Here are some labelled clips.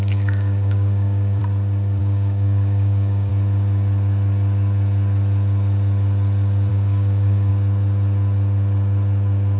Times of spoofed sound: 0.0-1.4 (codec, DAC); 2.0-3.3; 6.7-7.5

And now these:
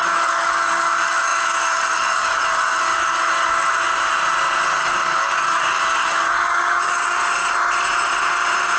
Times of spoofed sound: 0.0-3.9 (codec, DAC); 4.8-7.2

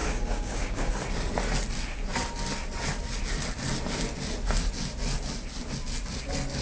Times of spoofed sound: 0.0-0.9 (codec, DAC)

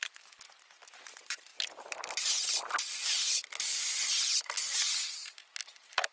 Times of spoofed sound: none